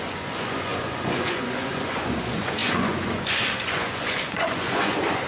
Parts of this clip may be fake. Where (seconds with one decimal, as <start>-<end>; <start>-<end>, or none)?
0.0-5.3